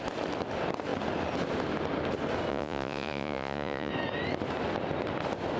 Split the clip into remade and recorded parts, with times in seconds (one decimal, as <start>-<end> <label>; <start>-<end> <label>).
0.0-2.5 recorded; 2.5-3.9 remade; 3.9-5.6 recorded